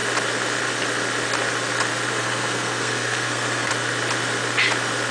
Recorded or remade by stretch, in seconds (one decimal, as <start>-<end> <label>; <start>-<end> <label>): 0.0-2.1 recorded; 2.1-3.7 remade; 3.7-5.1 recorded